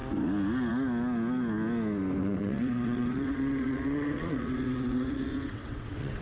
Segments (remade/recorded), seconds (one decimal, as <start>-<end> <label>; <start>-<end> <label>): 0.0-2.2 recorded; 2.2-6.2 remade

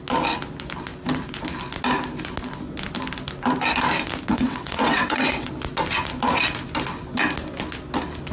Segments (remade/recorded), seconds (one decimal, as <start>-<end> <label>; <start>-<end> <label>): 0.0-4.3 recorded; 4.3-5.5 remade; 5.5-8.3 recorded

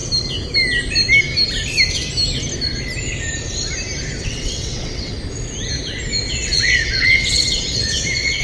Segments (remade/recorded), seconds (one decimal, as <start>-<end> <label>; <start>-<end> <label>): 0.0-4.2 recorded; 4.2-5.1 remade; 5.1-6.3 recorded; 6.3-8.4 remade

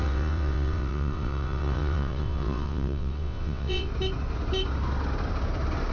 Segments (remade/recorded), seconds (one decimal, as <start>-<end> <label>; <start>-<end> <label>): 0.0-3.9 remade; 3.9-5.9 recorded